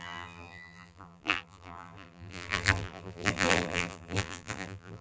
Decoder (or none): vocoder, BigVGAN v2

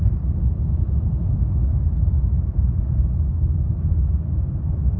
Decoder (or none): none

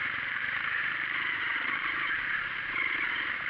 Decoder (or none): vocoder, BigVGAN v2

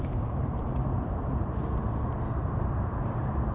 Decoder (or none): vocoder, BigVGAN v2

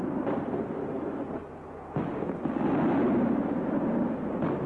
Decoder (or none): none